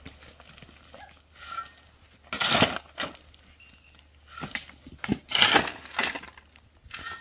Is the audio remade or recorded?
recorded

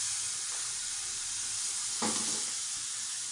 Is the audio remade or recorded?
recorded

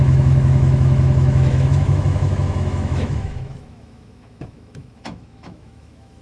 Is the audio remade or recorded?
remade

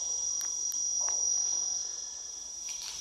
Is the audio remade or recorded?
recorded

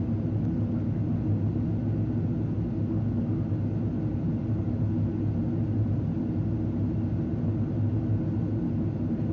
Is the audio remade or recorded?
recorded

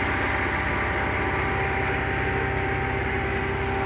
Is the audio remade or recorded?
recorded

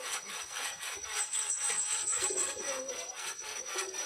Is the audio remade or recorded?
remade